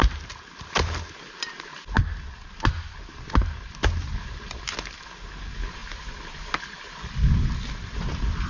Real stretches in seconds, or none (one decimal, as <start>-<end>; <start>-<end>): 0.0-8.5